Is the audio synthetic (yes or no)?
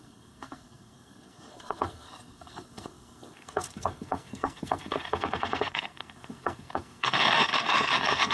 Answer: yes